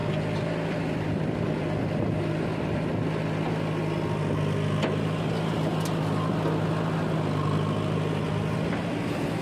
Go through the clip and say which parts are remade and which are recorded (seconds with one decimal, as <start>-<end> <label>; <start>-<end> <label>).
0.0-9.4 recorded